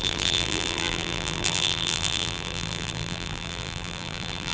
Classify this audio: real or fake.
fake